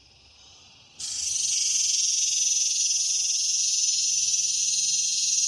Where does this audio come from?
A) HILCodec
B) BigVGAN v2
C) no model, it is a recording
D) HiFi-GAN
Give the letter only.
C